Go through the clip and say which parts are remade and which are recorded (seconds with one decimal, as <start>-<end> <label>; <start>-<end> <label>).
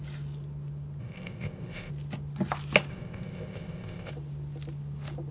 0.0-1.0 recorded; 1.0-1.9 remade; 1.9-2.9 recorded; 2.9-4.1 remade; 4.1-5.3 recorded